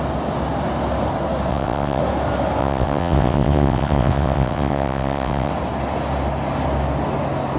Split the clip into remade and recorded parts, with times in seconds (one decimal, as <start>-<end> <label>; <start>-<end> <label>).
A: 0.0-1.5 recorded; 1.5-2.0 remade; 2.0-2.6 recorded; 2.6-5.5 remade; 5.5-7.6 recorded